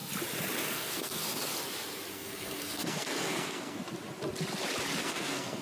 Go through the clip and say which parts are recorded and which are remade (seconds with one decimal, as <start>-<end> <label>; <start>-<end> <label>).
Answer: 0.0-0.6 recorded; 0.6-1.5 remade; 1.5-2.1 recorded; 2.1-3.8 remade; 3.8-5.0 recorded; 5.0-5.6 remade